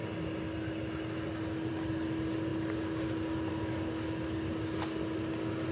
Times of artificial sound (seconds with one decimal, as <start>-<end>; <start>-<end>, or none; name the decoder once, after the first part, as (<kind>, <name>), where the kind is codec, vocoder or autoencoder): none